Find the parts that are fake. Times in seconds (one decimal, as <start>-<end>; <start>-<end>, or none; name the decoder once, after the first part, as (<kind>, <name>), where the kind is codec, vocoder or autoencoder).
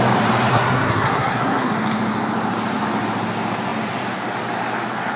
0.5-1.7 (codec, SNAC)